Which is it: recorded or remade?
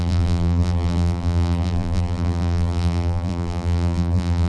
remade